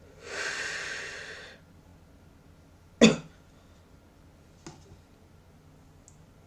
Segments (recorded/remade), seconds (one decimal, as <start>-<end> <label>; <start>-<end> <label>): 0.0-6.5 recorded